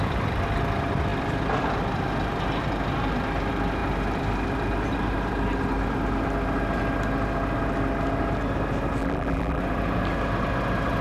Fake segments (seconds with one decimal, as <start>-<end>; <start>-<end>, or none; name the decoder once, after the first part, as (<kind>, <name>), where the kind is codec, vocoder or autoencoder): 9.0-9.6 (vocoder, BigVGAN v2)